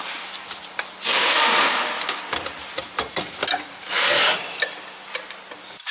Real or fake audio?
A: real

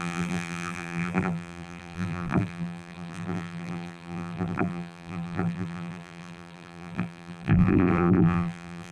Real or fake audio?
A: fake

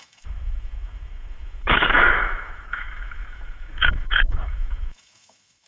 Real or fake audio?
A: fake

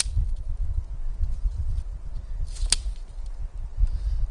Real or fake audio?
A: real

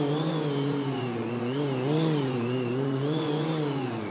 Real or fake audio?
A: fake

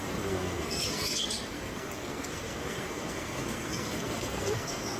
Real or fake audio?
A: fake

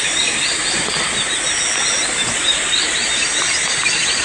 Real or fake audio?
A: real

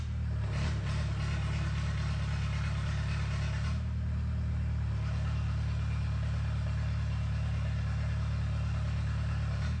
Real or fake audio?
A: real